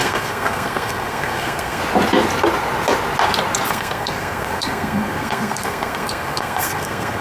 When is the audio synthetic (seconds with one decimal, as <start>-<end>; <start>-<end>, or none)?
0.0-1.8; 3.7-7.2